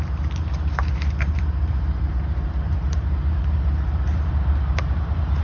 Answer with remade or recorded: remade